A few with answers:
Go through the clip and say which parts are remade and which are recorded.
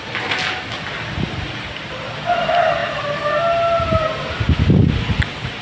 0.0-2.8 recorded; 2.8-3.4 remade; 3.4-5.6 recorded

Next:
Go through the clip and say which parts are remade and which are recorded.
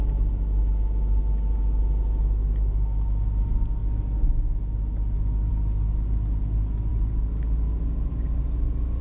0.0-9.0 recorded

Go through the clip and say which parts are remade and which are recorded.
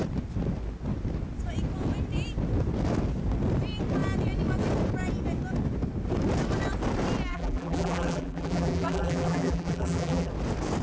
0.0-7.3 recorded; 7.3-10.3 remade; 10.3-10.8 recorded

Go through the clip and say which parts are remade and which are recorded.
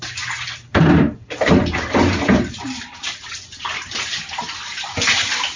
0.0-0.7 recorded; 0.7-1.8 remade; 1.8-5.6 recorded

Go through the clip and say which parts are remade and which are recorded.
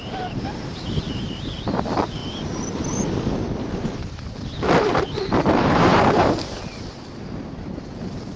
0.0-2.2 remade; 2.2-4.6 recorded; 4.6-8.4 remade